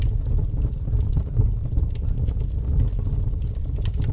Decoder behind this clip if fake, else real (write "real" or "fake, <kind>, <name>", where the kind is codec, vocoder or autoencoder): real